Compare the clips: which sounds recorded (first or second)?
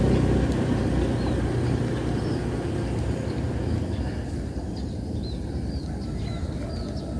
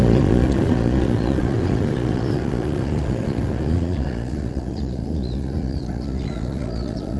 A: first